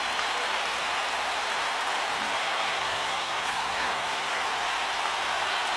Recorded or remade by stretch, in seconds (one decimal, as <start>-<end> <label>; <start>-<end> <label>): 0.0-2.4 recorded; 2.4-4.4 remade; 4.4-5.8 recorded